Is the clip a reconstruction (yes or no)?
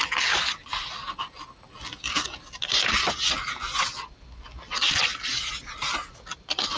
no